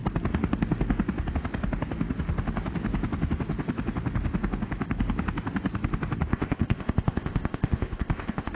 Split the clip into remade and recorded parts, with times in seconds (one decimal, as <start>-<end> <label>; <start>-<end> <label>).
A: 0.0-6.3 recorded; 6.3-8.5 remade